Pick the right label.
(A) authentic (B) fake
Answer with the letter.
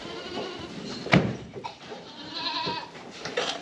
B